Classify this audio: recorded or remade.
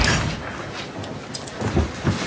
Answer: recorded